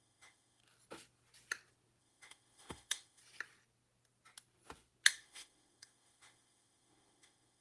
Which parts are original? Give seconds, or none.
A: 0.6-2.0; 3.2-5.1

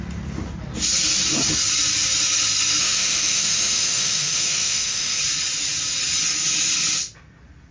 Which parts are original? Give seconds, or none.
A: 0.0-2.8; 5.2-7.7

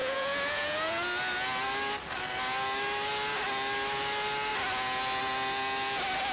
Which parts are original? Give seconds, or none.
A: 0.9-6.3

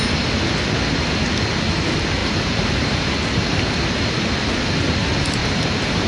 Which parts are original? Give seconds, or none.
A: 0.0-2.2; 3.8-5.4

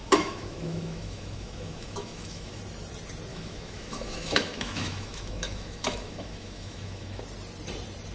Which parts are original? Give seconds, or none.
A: 2.6-3.3; 7.2-8.1

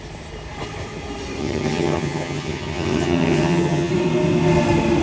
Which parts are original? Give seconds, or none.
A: 0.0-1.4; 3.9-5.0

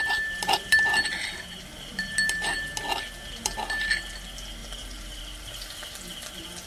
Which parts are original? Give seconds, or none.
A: 0.0-4.6; 5.2-6.7

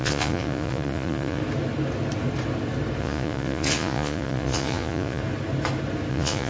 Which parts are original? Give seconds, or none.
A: 1.4-3.0; 5.2-6.1